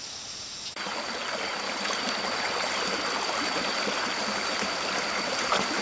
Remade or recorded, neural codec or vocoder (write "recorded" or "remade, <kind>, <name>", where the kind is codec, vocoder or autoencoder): recorded